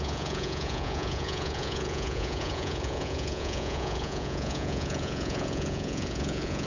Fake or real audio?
fake